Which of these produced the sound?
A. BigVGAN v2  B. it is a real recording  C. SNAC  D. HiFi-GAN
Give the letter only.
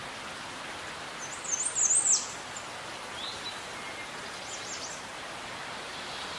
B